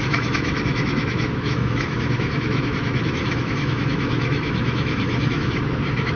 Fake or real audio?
fake